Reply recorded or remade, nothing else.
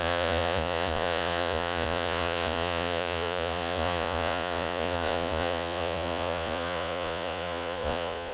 remade